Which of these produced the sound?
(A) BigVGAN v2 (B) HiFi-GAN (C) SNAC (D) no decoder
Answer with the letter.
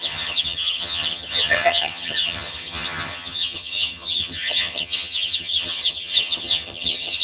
B